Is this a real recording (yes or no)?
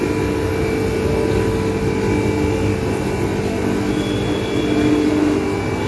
yes